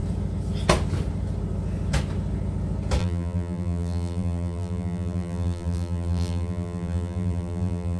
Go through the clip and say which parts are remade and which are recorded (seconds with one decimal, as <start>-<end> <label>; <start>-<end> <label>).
0.0-3.0 recorded; 3.0-8.0 remade

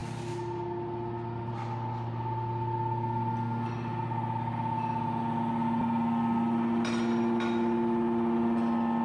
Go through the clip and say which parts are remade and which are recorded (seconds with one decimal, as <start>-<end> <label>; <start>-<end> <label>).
0.0-9.0 recorded

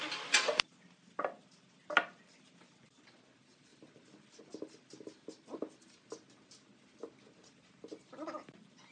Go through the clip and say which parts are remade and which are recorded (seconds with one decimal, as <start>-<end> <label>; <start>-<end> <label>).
0.0-8.9 recorded

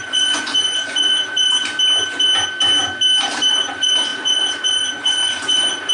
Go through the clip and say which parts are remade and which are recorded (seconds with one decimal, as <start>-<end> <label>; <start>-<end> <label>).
0.0-1.6 remade; 1.6-3.5 recorded; 3.5-5.9 remade

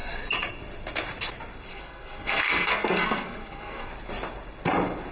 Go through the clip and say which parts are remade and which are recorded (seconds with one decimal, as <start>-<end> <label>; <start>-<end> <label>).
0.0-1.7 recorded; 1.7-3.9 remade; 3.9-5.1 recorded

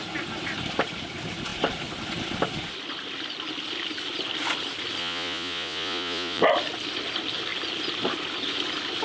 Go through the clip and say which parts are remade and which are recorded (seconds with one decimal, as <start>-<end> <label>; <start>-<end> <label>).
0.0-5.0 recorded; 5.0-6.4 remade; 6.4-9.0 recorded